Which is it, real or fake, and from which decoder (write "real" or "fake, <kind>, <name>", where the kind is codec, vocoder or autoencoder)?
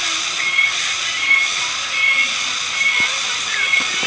real